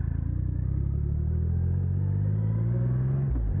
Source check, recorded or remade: recorded